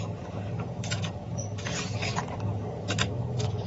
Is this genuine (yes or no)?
no